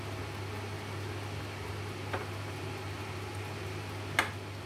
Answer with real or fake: real